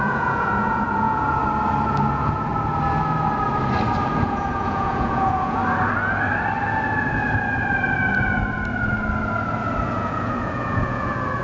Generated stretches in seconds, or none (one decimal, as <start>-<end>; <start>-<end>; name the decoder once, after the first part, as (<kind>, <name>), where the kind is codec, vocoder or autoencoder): 0.0-1.4 (vocoder, Vocos); 2.1-2.5; 4.2-5.6; 9.9-11.4